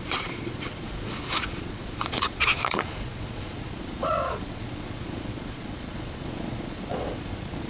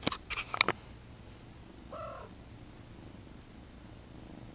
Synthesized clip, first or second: first